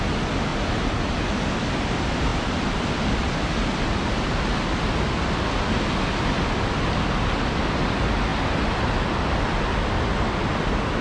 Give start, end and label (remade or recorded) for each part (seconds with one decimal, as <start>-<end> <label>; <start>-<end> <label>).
0.0-11.0 recorded